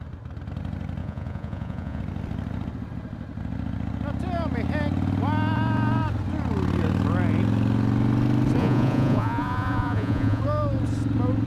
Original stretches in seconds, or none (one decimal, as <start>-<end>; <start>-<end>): 0.0-1.0; 2.0-8.6; 10.4-11.5